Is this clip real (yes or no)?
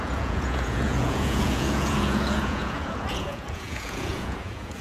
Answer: no